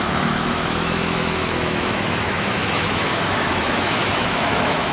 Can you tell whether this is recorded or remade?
remade